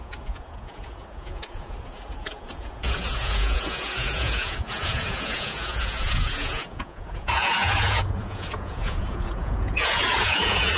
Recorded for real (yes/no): no